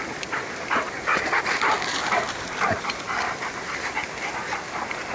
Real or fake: real